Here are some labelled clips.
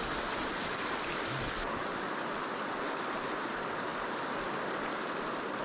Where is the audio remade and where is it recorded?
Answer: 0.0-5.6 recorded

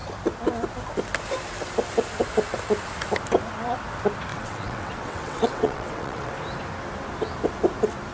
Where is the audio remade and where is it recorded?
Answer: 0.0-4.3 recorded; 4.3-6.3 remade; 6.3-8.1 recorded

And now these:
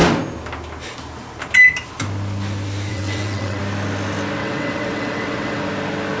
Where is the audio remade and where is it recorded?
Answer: 0.0-2.9 recorded; 2.9-3.6 remade; 3.6-4.4 recorded; 4.4-5.6 remade; 5.6-6.2 recorded

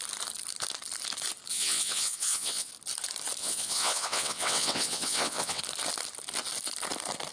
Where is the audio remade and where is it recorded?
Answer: 0.0-1.5 recorded; 1.5-2.7 remade; 2.7-3.4 recorded; 3.4-5.6 remade; 5.6-7.3 recorded

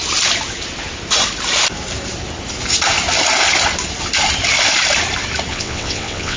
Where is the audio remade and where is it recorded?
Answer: 0.0-5.5 recorded; 5.5-6.4 remade

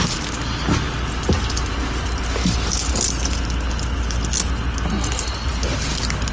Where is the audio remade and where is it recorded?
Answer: 0.0-6.3 recorded

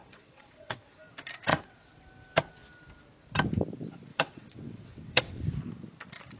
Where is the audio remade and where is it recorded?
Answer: 0.0-0.9 remade; 0.9-1.5 recorded; 1.5-2.0 remade; 2.0-4.1 recorded; 4.1-5.4 remade; 5.4-6.4 recorded

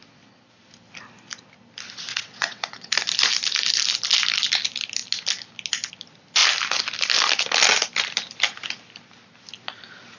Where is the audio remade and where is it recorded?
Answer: 0.0-2.1 recorded; 2.1-2.9 remade; 2.9-10.2 recorded